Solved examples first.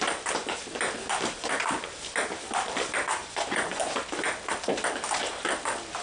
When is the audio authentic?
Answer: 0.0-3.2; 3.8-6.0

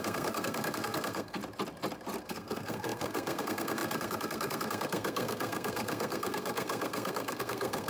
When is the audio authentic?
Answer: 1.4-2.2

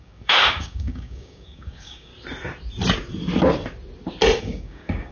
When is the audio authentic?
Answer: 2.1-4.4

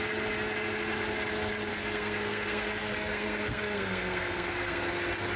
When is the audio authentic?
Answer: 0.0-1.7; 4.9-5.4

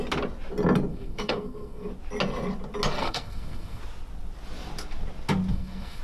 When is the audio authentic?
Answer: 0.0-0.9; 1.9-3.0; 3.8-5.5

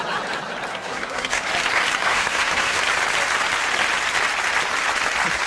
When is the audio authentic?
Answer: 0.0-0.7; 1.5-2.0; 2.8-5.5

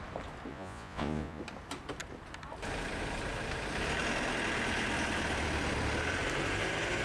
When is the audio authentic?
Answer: 0.0-0.5; 1.4-7.0

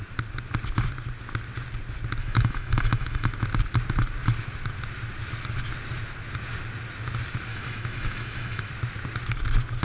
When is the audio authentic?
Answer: 0.0-2.2; 3.3-7.5; 8.7-9.8